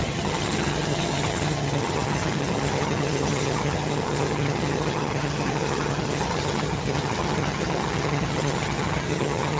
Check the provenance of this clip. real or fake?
fake